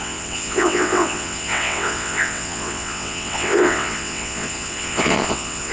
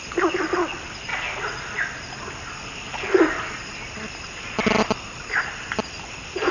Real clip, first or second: second